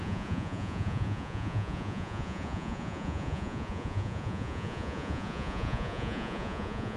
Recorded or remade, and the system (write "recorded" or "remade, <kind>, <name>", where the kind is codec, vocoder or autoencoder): remade, vocoder, Vocos